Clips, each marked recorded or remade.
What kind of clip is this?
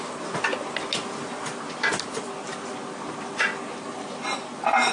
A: recorded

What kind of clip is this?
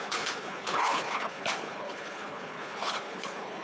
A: remade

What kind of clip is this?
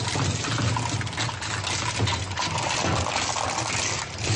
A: recorded